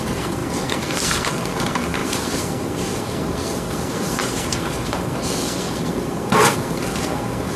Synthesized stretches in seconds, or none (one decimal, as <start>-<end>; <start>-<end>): 0.0-7.6